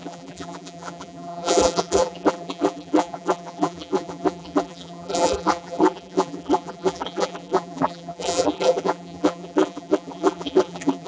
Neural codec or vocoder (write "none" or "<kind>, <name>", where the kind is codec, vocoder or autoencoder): vocoder, BigVGAN v2